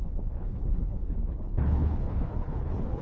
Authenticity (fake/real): fake